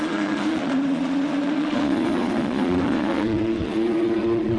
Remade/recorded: remade